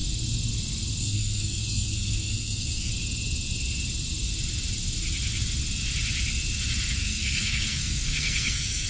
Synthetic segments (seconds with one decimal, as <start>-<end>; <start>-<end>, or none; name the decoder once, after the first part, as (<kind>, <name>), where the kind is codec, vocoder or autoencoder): 1.0-2.9 (codec, SNAC); 6.9-8.9